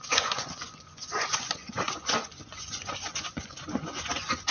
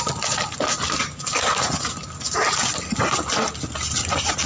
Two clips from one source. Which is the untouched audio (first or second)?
second